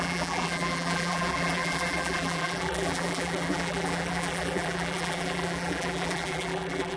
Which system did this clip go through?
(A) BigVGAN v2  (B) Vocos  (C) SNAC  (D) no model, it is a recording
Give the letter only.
A